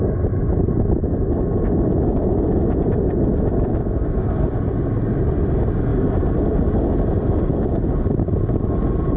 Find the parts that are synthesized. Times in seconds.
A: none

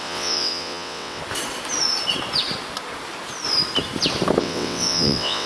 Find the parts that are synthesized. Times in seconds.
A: 0.0-1.2 (vocoder, WaveNeXt); 4.4-5.5

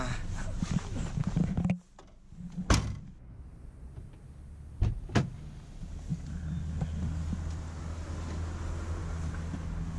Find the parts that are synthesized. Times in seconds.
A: none

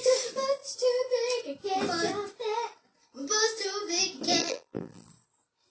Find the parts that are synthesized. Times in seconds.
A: 4.4-5.1 (vocoder, BigVGAN v2)